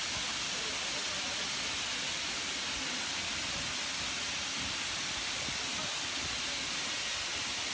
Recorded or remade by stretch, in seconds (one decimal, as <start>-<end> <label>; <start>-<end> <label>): 0.0-7.7 recorded